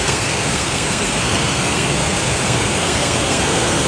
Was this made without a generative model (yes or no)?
no